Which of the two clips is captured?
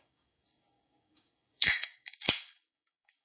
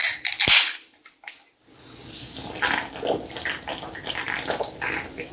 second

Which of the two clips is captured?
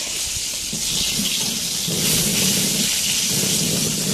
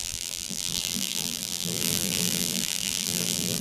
first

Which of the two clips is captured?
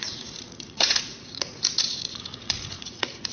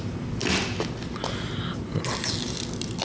second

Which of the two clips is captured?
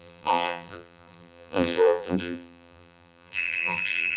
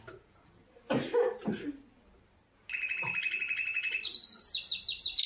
second